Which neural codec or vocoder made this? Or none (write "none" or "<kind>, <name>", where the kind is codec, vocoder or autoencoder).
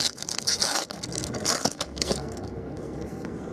codec, SNAC